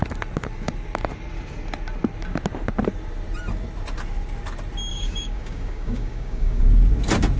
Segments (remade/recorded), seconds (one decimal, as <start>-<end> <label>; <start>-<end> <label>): 0.0-4.9 recorded; 4.9-6.6 remade; 6.6-7.4 recorded